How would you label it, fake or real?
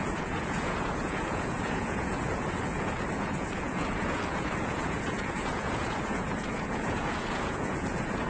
fake